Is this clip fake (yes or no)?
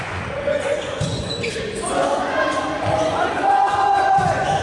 yes